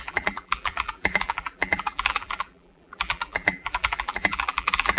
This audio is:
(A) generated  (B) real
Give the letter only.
A